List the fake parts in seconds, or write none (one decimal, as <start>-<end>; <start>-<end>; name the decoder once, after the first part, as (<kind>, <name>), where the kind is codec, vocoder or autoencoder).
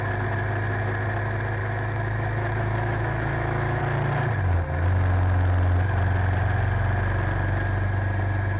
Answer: 1.6-3.8 (autoencoder, DAC-VAE)